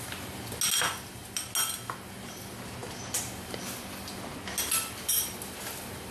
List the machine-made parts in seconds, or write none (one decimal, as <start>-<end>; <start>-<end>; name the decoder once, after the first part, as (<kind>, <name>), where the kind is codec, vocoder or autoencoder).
none